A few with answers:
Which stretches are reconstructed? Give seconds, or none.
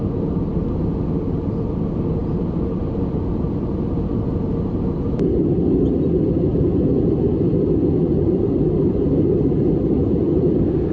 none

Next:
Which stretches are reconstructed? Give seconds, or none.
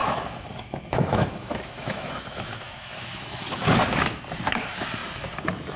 0.0-3.5 (autoencoder, DAC-VAE)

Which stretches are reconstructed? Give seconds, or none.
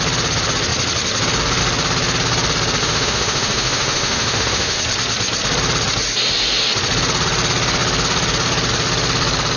2.8-4.8 (autoencoder, DAC-VAE)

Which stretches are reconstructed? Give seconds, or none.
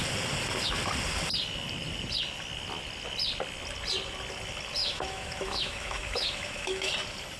4.8-6.9 (autoencoder, DAC-VAE)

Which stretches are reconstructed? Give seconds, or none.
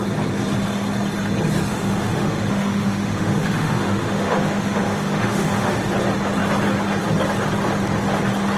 1.7-5.8 (autoencoder, DAC-VAE)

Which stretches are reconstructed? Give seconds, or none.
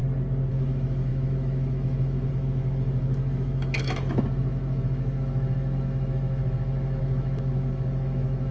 0.5-8.5 (autoencoder, DAC-VAE)